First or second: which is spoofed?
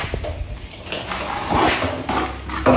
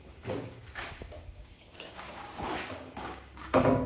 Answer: second